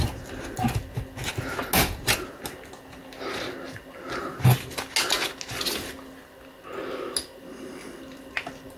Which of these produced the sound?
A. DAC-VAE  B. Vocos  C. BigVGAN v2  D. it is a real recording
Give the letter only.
D